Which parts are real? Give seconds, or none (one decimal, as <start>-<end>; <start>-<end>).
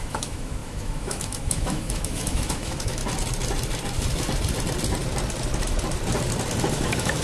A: 3.0-6.7